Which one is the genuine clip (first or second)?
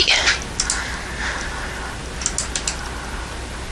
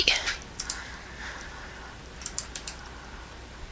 first